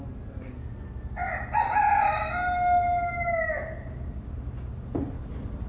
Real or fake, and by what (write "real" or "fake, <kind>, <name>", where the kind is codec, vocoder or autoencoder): real